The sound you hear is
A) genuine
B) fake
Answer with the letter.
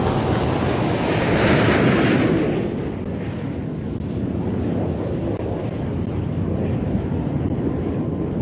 A